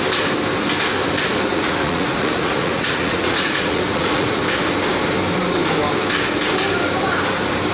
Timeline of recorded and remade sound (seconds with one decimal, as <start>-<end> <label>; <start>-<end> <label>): 0.0-1.5 recorded; 1.5-4.4 remade; 4.4-7.7 recorded